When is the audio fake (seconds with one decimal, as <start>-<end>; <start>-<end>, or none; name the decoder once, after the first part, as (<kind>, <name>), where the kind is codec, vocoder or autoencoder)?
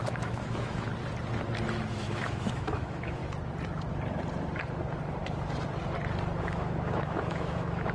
0.0-0.9 (autoencoder, DAC-VAE); 1.9-3.2; 6.4-7.9